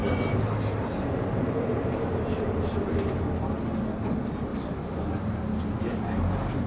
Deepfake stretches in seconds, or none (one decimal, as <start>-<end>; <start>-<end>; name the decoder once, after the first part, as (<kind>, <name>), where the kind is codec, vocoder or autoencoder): 0.0-3.2 (vocoder, BigVGAN v2)